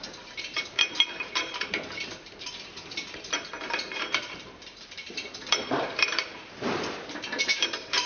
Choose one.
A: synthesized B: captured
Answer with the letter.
A